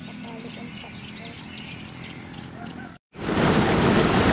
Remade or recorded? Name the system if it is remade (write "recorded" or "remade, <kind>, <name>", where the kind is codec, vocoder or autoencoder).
recorded